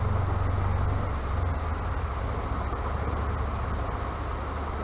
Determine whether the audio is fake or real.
real